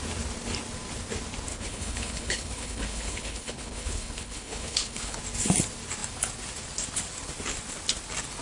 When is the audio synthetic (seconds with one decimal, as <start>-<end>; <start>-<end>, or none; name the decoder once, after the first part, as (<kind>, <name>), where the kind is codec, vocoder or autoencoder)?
1.5-5.2 (codec, HILCodec)